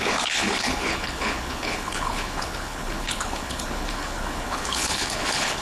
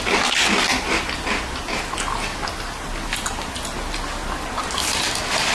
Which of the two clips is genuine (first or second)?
second